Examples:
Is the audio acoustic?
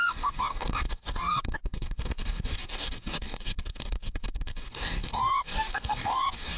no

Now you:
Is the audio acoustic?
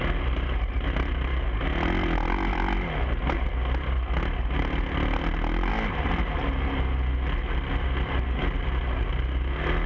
yes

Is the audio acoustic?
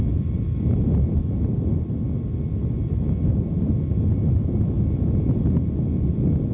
yes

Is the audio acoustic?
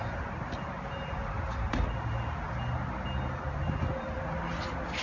yes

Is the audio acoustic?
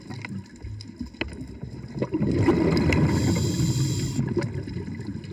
yes